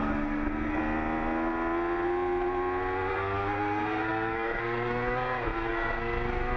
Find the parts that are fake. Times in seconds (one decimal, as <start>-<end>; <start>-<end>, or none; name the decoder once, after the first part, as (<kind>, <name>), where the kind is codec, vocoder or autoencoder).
0.0-0.8 (codec, SNAC); 3.1-6.6